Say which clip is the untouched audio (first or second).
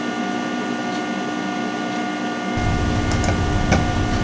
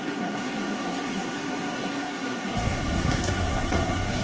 first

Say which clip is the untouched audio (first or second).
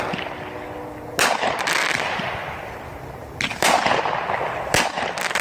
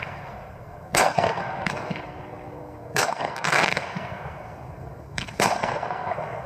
first